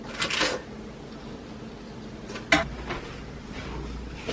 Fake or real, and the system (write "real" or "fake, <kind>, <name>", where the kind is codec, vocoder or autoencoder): real